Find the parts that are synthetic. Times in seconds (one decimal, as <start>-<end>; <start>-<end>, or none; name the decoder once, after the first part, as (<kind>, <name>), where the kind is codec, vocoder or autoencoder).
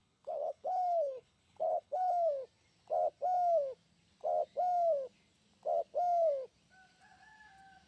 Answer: 0.0-2.1 (codec, HILCodec)